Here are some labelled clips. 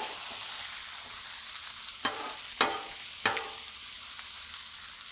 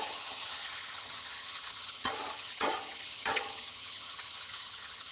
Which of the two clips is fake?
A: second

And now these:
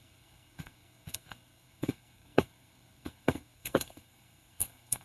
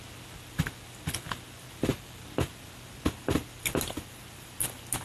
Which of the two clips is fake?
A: first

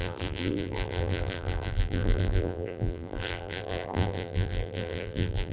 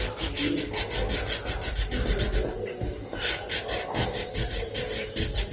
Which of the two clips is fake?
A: first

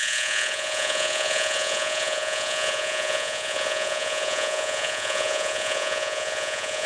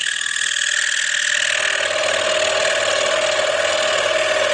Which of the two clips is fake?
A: first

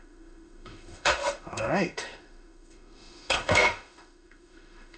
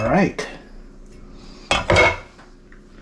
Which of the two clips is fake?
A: first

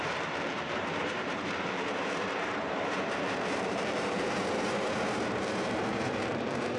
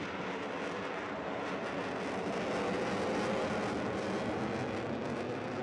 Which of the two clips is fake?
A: first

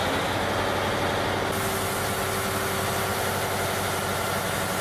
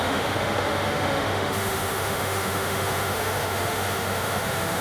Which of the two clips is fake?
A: second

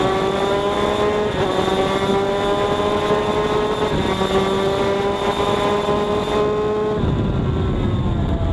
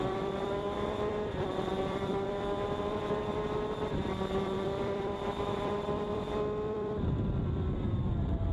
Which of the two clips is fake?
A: second